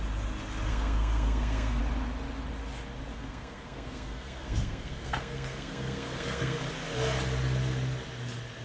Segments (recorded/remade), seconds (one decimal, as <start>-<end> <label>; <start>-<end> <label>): 0.0-0.7 recorded; 0.7-1.8 remade; 1.8-3.1 recorded; 3.1-6.6 remade; 6.6-8.6 recorded